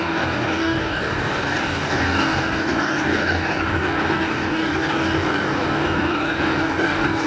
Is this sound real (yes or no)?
no